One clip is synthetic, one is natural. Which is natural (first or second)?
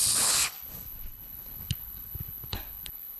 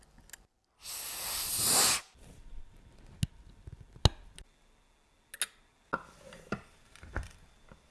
second